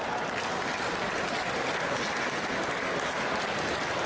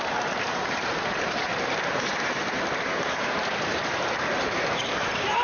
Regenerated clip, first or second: second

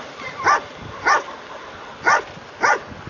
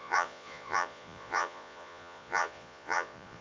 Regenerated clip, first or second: second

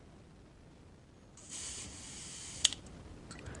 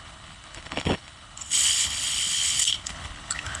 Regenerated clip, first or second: second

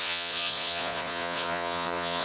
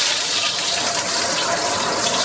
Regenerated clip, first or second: first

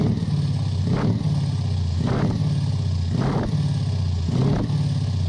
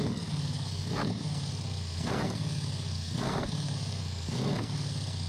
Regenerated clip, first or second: second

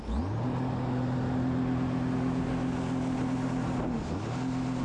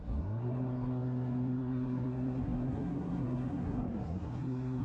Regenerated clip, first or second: second